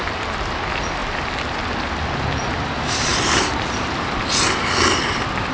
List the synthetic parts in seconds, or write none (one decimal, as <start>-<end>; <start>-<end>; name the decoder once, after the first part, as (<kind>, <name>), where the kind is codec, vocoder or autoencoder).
none